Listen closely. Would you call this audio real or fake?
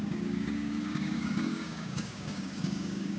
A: fake